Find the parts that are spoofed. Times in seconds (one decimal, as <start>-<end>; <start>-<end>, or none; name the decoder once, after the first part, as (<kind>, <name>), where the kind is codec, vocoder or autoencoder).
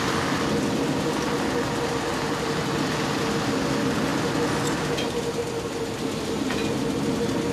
none